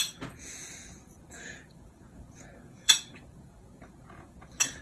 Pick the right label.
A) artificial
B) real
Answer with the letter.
A